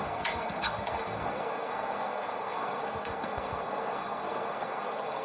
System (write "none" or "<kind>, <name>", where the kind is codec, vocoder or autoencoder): codec, SNAC